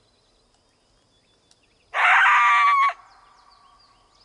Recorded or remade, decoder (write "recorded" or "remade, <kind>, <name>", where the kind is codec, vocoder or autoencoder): recorded